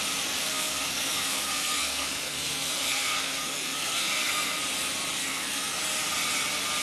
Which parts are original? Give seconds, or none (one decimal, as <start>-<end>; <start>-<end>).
0.0-0.5; 4.6-5.2; 5.8-6.8